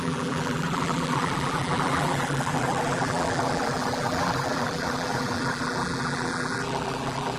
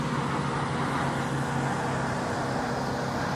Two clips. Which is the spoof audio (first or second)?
first